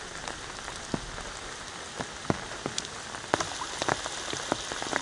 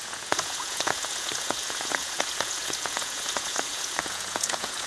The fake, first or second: second